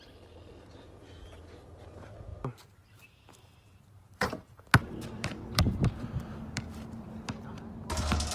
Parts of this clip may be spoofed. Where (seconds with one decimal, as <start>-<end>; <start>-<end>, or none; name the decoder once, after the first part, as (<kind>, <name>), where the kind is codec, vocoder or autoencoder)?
2.3-4.2 (vocoder, BigVGAN v2); 4.8-7.6